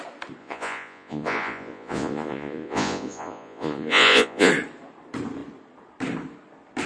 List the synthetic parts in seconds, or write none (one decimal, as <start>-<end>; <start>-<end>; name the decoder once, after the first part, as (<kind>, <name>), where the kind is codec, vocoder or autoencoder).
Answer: 0.4-4.5 (vocoder, Vocos)

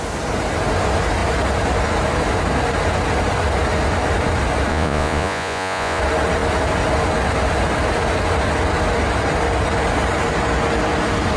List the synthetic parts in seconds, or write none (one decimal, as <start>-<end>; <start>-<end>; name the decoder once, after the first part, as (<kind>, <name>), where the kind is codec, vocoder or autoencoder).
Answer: 4.7-6.0 (vocoder, Vocos)

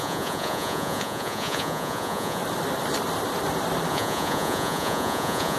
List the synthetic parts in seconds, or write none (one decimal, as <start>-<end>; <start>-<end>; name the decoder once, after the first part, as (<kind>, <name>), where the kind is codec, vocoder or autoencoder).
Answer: 0.0-2.4 (vocoder, Vocos); 3.9-5.6

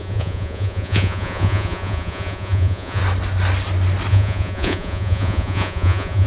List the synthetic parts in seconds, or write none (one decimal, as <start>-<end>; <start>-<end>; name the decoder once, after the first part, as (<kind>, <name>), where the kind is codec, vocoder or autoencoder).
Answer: 0.0-3.0 (vocoder, Vocos); 4.1-6.3

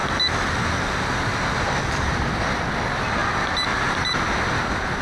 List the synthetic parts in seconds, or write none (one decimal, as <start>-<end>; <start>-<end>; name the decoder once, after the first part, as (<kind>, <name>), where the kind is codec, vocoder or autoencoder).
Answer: none

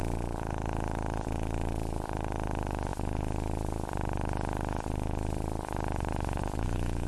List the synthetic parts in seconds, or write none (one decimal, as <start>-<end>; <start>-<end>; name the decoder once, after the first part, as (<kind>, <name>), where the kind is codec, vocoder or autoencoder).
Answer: 0.0-2.9 (vocoder, Vocos); 6.4-7.1

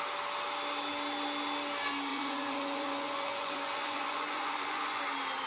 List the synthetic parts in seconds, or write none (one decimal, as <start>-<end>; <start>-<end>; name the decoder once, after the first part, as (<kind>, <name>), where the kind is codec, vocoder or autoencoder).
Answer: 2.1-5.0 (vocoder, Vocos)